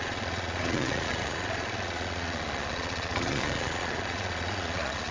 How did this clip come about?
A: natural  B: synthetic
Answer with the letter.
B